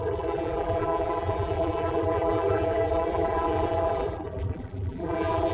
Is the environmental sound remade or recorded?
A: remade